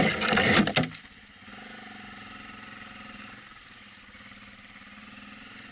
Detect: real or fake real